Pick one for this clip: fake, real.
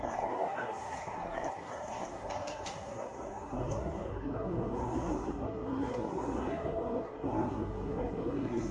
fake